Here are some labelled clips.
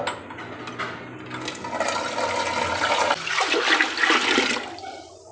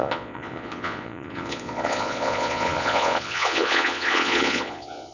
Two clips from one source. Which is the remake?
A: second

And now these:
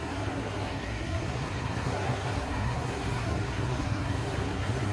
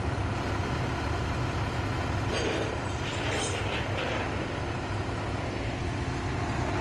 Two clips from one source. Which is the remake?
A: first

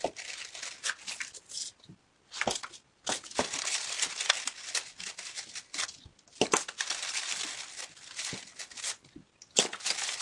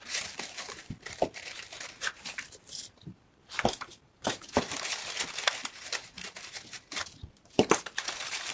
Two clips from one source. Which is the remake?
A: second